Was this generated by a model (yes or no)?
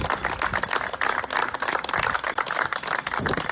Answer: no